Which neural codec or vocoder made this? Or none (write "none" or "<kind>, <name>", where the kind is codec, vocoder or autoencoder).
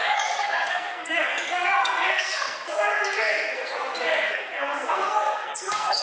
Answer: codec, SNAC